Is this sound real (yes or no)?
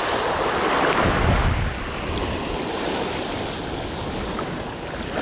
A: yes